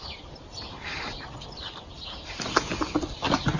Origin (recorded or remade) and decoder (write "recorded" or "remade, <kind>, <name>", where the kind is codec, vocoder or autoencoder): recorded